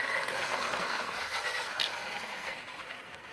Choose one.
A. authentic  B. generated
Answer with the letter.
B